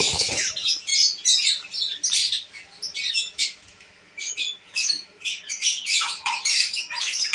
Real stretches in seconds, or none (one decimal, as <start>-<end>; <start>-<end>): 0.9-3.1